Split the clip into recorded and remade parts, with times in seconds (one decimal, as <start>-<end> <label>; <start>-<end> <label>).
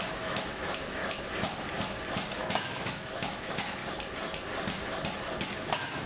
0.0-1.0 remade; 1.0-2.4 recorded; 2.4-3.8 remade; 3.8-5.6 recorded; 5.6-6.1 remade